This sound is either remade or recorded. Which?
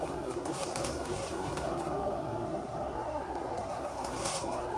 remade